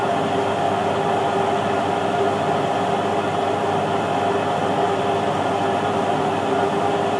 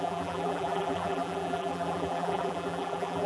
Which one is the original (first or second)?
first